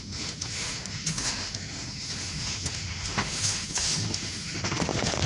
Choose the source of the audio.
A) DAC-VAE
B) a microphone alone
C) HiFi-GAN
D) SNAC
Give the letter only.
A